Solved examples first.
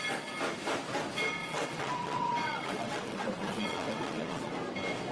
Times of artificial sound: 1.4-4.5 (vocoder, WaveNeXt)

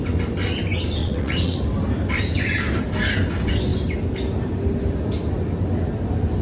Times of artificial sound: 1.0-1.6 (vocoder, WaveNeXt)

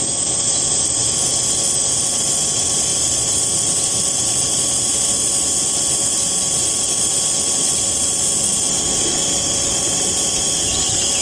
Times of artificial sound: none

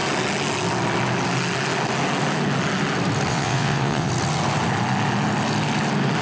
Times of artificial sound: 3.3-4.1 (vocoder, WaveNeXt)